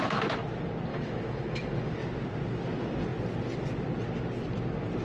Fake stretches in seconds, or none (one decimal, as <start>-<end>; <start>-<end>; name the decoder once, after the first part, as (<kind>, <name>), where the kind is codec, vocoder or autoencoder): 0.9-1.9 (autoencoder, DAC-VAE)